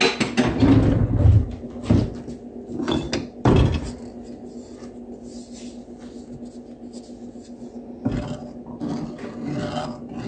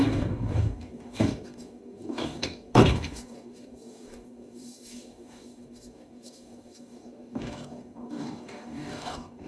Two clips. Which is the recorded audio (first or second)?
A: first